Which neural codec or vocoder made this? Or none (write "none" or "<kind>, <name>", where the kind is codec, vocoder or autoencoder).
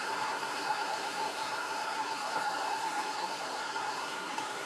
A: codec, SNAC